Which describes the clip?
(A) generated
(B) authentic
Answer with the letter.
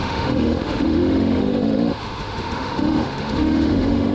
A